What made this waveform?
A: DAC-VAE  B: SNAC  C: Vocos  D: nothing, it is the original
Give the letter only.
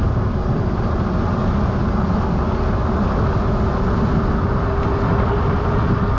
D